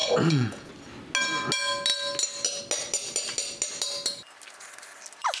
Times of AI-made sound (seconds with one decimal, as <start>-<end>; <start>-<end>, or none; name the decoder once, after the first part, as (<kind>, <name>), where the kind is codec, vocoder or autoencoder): 0.0-0.7 (vocoder, Vocos)

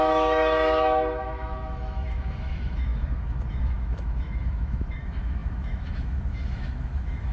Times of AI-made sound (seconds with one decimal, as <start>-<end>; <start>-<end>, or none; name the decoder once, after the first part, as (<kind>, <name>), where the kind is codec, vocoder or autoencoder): 0.0-7.3 (autoencoder, DAC-VAE)